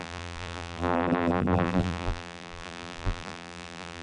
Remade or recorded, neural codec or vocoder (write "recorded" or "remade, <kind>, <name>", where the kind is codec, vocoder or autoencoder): remade, vocoder, BigVGAN v2